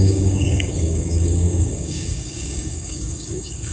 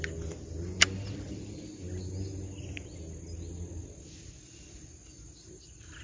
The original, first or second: second